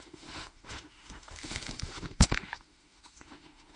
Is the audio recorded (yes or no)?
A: no